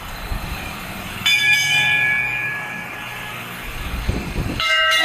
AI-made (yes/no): yes